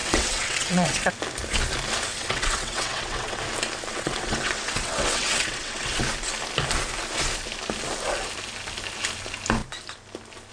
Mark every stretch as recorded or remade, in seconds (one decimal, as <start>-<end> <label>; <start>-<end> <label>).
0.0-1.2 remade; 1.2-2.1 recorded; 2.1-3.4 remade; 3.4-3.9 recorded; 3.9-6.0 remade; 6.0-10.5 recorded